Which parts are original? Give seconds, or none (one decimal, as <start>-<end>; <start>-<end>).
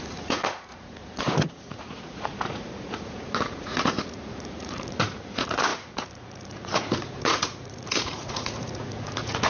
none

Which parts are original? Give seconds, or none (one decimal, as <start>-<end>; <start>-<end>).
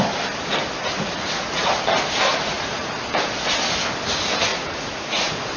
0.0-0.8; 1.9-2.3; 2.9-4.5; 5.1-5.6